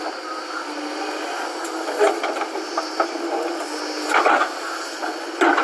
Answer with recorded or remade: recorded